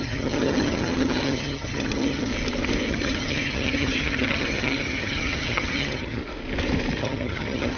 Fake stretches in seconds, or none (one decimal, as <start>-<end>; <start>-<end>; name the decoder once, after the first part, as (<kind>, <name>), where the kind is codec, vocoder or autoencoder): 0.0-2.3 (vocoder, HiFi-GAN); 2.9-6.2; 7.0-7.8